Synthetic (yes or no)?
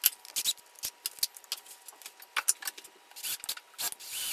no